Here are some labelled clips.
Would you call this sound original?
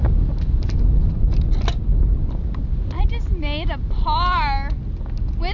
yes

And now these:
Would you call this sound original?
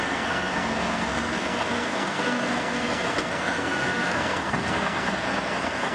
no